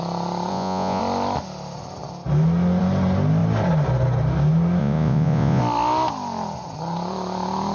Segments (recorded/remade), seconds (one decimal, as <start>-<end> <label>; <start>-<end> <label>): 0.0-0.5 recorded; 0.5-1.0 remade; 1.0-4.8 recorded; 4.8-5.6 remade; 5.6-7.7 recorded

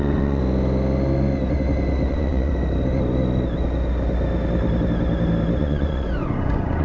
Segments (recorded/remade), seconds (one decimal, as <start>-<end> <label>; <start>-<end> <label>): 0.0-0.4 remade; 0.4-2.1 recorded; 2.1-2.5 remade; 2.5-5.6 recorded; 5.6-6.8 remade

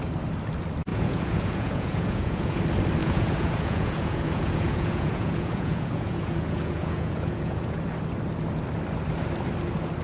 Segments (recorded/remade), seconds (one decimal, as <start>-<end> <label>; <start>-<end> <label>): 0.0-0.9 recorded; 0.9-2.6 remade; 2.6-3.0 recorded; 3.0-7.8 remade; 7.8-10.0 recorded

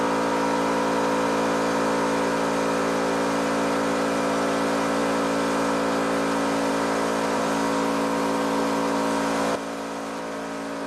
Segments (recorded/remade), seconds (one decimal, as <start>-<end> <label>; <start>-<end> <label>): 0.0-10.9 recorded

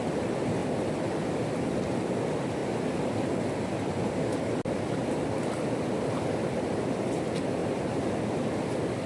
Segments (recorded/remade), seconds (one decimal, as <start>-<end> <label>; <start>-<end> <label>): 0.0-9.1 recorded

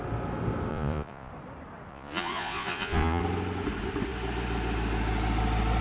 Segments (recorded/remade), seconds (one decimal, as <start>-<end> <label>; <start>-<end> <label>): 0.0-0.7 recorded; 0.7-1.3 remade; 1.3-1.9 recorded; 1.9-3.2 remade; 3.2-5.8 recorded

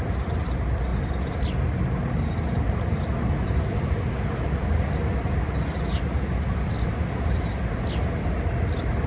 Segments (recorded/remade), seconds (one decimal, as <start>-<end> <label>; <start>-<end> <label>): 0.0-9.1 recorded

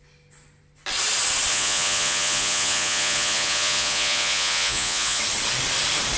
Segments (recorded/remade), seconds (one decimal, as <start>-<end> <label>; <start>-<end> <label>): 0.0-1.5 recorded; 1.5-5.2 remade; 5.2-6.2 recorded